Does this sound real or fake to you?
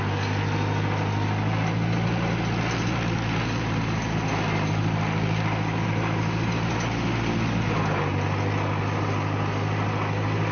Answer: real